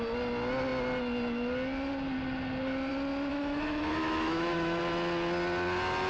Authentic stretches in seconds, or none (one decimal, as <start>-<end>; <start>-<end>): 0.0-3.3; 4.8-6.1